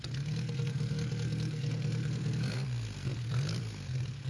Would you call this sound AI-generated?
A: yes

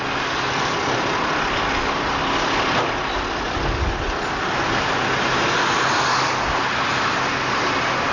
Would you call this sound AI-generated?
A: no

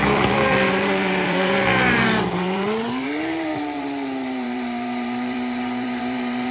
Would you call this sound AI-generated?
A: yes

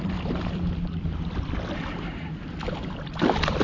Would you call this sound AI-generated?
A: yes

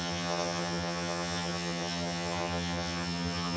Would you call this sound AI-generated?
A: yes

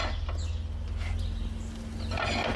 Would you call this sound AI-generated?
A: no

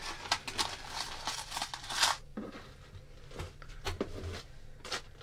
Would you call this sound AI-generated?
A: no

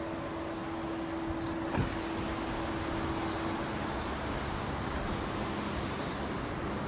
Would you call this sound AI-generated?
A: no